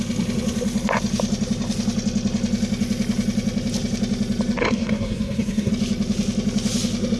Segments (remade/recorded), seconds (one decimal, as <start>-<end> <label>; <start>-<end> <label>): 0.0-4.6 recorded; 4.6-5.7 remade; 5.7-7.2 recorded